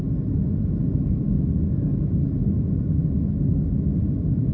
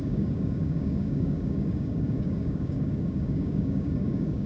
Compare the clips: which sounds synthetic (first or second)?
second